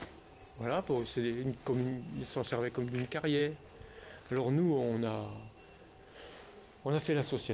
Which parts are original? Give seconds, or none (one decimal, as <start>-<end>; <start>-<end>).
0.0-7.5